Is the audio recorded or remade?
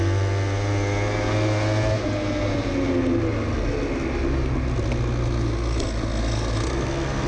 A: recorded